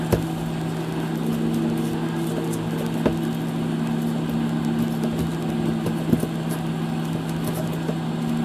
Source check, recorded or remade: recorded